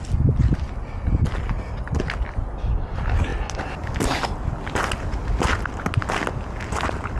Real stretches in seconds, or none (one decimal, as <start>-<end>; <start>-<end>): 0.0-7.2